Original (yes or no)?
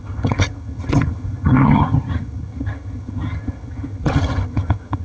no